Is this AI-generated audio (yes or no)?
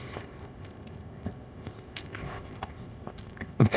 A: yes